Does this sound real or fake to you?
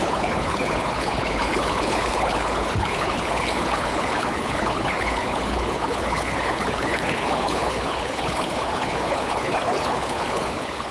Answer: fake